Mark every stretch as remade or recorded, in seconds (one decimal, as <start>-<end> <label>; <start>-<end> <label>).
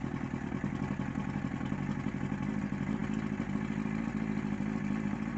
0.0-5.4 recorded